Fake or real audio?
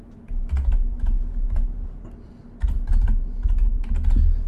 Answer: real